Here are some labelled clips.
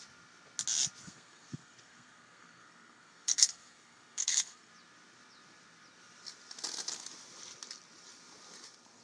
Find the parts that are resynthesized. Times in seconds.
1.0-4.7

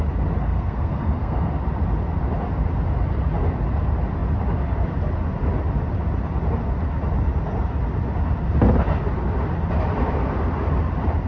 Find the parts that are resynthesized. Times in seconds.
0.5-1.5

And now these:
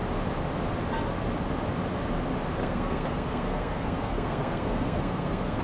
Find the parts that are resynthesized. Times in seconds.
2.6-5.6

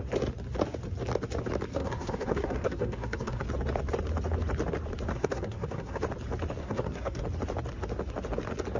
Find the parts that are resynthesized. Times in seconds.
1.7-3.4; 5.1-6.0; 6.6-7.2

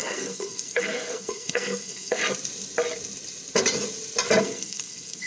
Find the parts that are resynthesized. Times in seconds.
0.0-2.2; 4.4-5.3